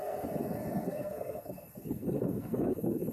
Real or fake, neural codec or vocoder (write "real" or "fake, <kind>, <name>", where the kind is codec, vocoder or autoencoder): fake, codec, SNAC